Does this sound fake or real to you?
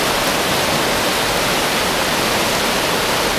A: real